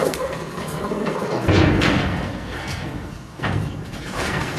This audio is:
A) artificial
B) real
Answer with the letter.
A